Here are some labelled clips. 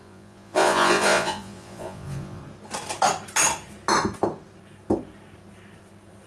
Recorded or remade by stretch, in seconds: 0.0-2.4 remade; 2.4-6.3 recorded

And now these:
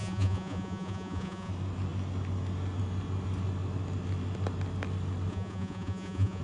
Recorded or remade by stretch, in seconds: 0.0-1.5 remade; 1.5-5.3 recorded; 5.3-6.4 remade

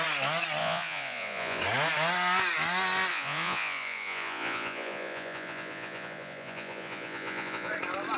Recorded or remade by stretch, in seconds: 0.0-0.6 recorded; 0.6-1.6 remade; 1.6-3.1 recorded; 3.1-7.7 remade; 7.7-8.2 recorded

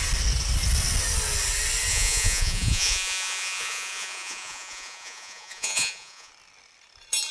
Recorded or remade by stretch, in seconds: 0.0-1.9 recorded; 1.9-6.3 remade; 6.3-7.3 recorded

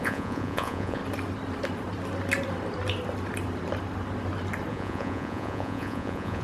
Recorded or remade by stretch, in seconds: 0.0-1.0 remade; 1.0-4.7 recorded; 4.7-6.4 remade

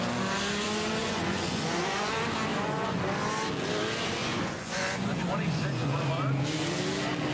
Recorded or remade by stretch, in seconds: 0.0-1.0 recorded; 1.0-2.1 remade; 2.1-2.5 recorded; 2.5-3.0 remade; 3.0-4.2 recorded; 4.2-5.9 remade; 5.9-7.3 recorded